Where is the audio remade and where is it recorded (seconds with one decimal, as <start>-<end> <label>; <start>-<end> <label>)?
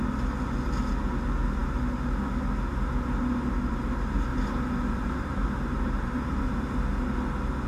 0.0-4.3 recorded; 4.3-6.8 remade; 6.8-7.7 recorded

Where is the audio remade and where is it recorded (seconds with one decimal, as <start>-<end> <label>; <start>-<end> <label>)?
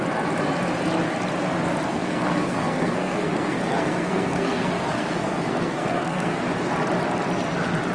0.0-1.9 recorded; 1.9-6.4 remade; 6.4-7.9 recorded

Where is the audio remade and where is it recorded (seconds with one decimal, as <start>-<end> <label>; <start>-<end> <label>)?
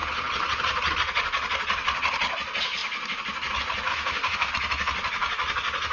0.0-3.9 recorded; 3.9-4.5 remade; 4.5-5.9 recorded